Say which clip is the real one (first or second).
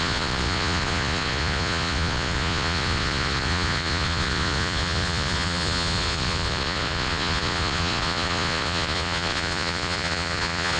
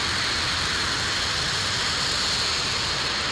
second